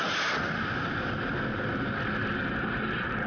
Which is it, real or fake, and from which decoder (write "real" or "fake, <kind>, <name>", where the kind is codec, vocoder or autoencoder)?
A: real